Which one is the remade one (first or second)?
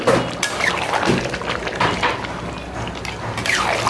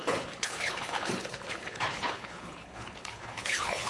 second